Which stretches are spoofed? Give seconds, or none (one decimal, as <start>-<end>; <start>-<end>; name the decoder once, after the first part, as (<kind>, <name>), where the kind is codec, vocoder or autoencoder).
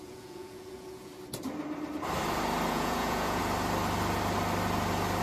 0.0-1.1 (vocoder, Vocos); 2.7-3.4